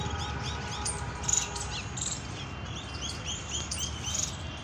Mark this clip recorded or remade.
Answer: recorded